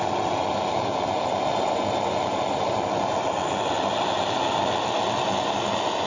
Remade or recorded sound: recorded